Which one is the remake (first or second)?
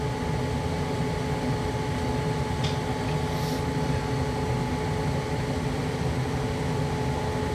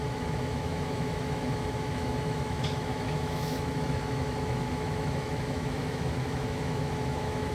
second